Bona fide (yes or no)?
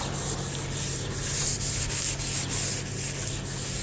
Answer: yes